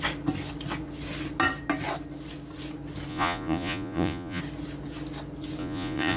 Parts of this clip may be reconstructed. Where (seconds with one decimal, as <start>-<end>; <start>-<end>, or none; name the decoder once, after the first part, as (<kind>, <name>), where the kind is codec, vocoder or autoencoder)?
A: 3.1-4.4 (vocoder, Vocos); 5.6-6.2